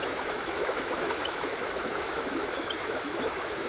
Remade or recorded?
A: remade